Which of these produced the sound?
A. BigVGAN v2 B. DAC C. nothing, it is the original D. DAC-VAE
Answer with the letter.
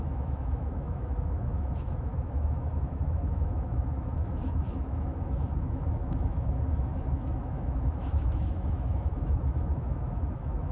D